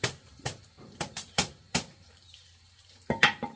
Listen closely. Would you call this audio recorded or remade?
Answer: remade